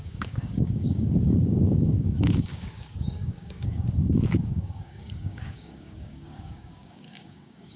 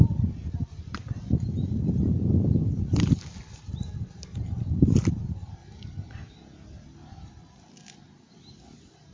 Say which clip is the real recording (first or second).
second